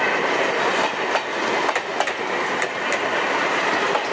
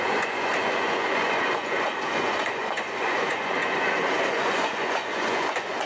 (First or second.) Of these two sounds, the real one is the first